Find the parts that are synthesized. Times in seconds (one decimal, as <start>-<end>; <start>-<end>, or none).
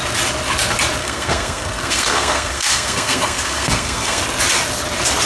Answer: 1.0-4.2